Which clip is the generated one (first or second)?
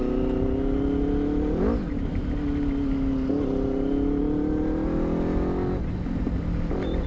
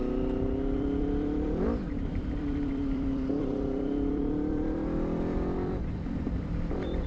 second